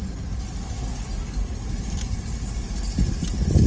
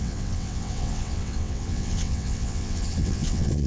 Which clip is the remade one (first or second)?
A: second